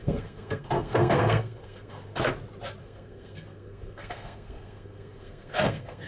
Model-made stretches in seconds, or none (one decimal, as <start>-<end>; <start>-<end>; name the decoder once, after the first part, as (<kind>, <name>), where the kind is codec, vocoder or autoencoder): 0.0-2.3 (codec, SNAC); 2.8-6.1